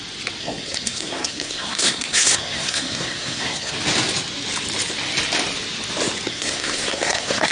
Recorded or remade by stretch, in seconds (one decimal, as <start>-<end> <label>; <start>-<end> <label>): 0.0-0.4 recorded; 0.4-3.7 remade; 3.7-6.3 recorded; 6.3-7.5 remade